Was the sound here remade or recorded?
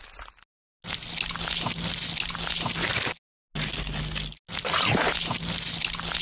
recorded